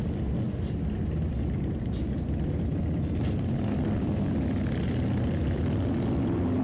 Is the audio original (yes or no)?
yes